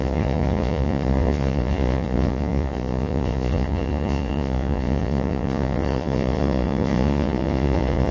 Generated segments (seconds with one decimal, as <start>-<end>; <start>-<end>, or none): 0.0-8.1